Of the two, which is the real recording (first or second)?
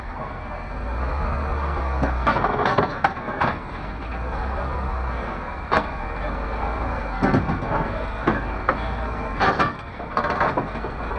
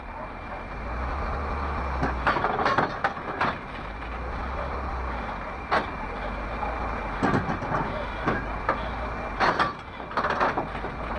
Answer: second